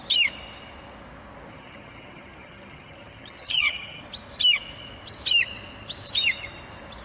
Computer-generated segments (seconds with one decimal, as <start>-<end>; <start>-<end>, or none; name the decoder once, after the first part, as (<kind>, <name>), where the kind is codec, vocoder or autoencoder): 1.5-4.0 (vocoder, HiFi-GAN)